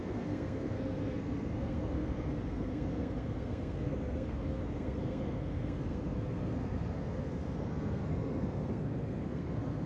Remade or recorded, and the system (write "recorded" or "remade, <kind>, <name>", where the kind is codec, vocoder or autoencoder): remade, codec, SNAC